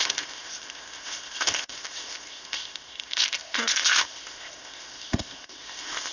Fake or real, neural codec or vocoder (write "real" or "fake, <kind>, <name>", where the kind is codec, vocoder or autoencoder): fake, codec, ZipCodec